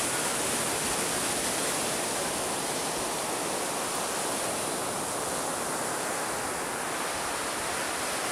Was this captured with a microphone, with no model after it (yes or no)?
yes